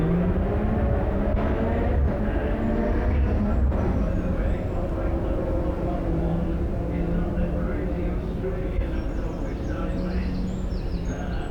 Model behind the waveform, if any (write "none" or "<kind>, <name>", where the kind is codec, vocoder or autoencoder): none